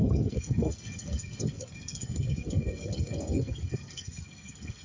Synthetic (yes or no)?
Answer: yes